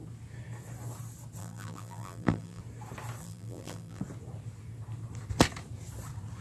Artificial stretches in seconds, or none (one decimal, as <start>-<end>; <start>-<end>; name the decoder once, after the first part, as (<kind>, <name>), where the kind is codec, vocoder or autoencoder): 1.4-2.6 (vocoder, BigVGAN v2); 3.2-4.0